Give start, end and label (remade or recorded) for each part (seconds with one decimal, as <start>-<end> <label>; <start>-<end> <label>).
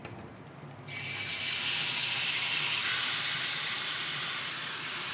0.0-5.1 recorded